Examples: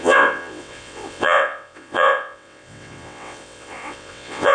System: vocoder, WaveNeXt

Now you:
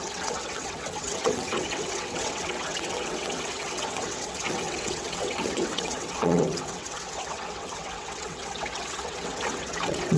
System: vocoder, WaveNeXt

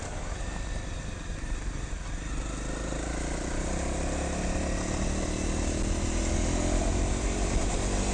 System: none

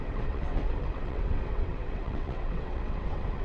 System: vocoder, WaveNeXt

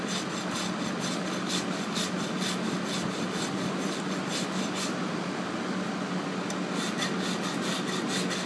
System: none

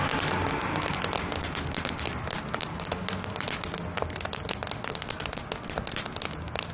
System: none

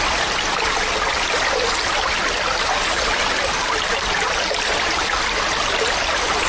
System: none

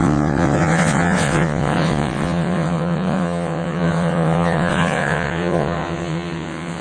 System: vocoder, WaveNeXt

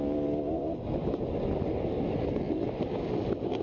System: none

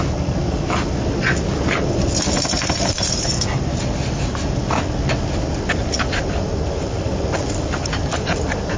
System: none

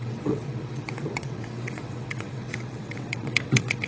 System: vocoder, WaveNeXt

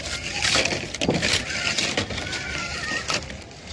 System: none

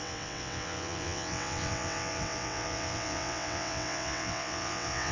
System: vocoder, WaveNeXt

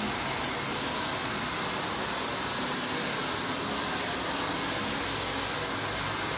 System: none